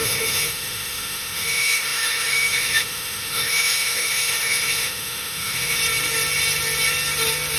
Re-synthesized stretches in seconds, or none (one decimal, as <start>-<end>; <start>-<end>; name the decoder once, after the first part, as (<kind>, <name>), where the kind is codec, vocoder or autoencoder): 0.0-5.8 (autoencoder, DAC-VAE)